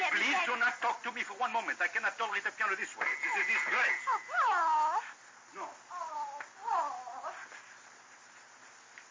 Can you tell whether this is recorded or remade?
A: recorded